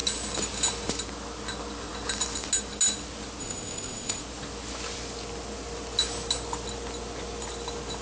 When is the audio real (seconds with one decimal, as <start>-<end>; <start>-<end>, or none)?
0.0-3.4; 4.2-8.0